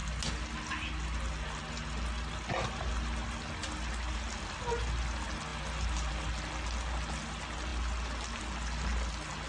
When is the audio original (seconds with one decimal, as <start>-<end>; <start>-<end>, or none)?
0.0-9.5